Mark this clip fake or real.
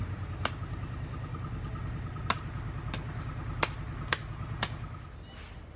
real